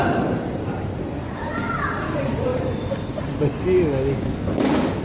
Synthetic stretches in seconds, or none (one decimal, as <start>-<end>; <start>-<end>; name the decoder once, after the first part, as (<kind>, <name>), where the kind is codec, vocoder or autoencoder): none

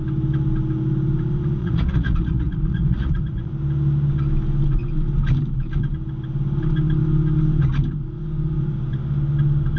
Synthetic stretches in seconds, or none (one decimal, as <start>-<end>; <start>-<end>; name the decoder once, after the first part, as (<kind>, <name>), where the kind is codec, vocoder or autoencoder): 1.6-3.5 (vocoder, Vocos)

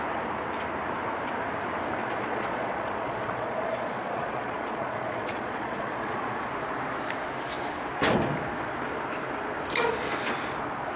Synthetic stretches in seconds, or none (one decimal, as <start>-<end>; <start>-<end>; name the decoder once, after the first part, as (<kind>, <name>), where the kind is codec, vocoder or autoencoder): 2.0-6.5 (vocoder, Vocos)

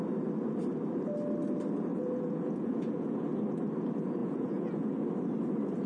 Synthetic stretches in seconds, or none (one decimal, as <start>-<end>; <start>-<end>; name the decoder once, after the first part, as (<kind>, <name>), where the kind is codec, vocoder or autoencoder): 1.9-3.2 (vocoder, Vocos); 4.2-5.0

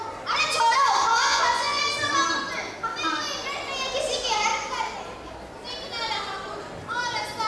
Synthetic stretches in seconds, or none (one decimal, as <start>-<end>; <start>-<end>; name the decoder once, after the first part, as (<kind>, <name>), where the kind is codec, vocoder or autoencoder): 1.1-1.8 (vocoder, Vocos)

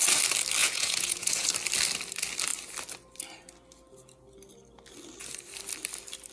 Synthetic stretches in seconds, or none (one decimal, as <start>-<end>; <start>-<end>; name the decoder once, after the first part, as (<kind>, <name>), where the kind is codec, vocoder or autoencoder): 0.6-1.5 (vocoder, Vocos)

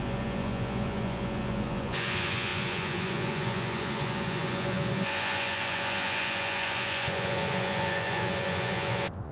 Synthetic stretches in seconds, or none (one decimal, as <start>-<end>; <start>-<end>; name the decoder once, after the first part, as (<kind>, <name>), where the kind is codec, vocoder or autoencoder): 0.0-9.3 (vocoder, Vocos)

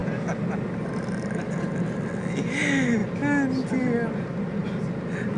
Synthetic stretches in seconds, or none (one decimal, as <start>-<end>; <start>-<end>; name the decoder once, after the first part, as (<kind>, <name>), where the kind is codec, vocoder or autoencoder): none